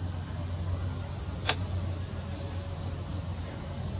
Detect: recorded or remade recorded